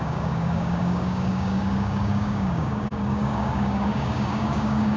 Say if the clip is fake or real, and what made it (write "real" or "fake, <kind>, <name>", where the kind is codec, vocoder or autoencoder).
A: fake, codec, DAC